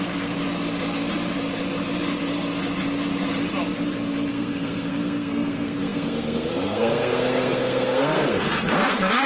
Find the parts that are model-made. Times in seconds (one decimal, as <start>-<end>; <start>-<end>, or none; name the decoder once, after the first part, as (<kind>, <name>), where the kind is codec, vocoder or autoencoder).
0.0-0.4 (codec, SNAC); 4.3-9.3